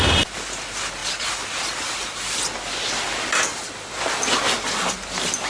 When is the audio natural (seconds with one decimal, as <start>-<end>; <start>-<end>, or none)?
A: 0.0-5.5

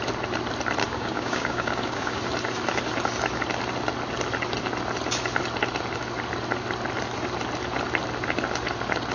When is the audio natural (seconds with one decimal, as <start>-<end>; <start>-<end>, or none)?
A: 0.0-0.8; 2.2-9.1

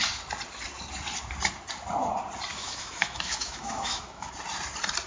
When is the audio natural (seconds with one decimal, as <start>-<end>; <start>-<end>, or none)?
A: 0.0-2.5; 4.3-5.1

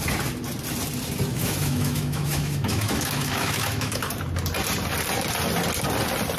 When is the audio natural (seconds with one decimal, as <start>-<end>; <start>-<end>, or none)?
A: 0.0-1.3; 4.0-6.4

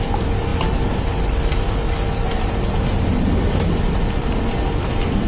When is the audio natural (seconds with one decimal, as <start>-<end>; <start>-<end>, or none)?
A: 0.0-5.3

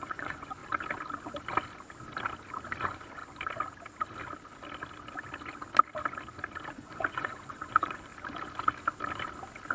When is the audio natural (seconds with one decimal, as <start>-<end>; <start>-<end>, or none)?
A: 0.6-2.8; 3.2-6.7; 8.1-9.7

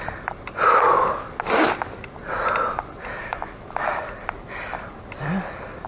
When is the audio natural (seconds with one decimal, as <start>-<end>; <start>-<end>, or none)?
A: 0.0-3.2; 4.0-5.9

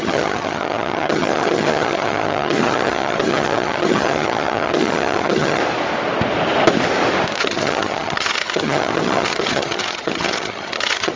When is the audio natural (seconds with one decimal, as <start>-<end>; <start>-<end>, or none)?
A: 5.6-7.4